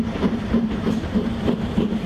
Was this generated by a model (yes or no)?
yes